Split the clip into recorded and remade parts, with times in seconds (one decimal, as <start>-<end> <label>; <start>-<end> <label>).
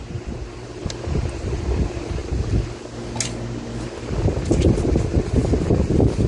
0.0-6.3 recorded